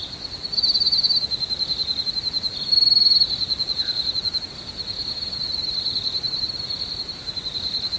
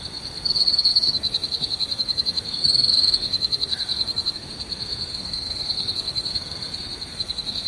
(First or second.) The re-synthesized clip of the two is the second